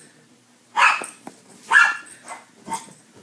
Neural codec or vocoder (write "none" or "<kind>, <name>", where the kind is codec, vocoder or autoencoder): none